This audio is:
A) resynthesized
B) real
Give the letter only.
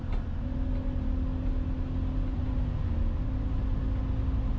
B